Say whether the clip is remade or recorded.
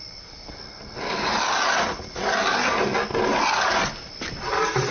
recorded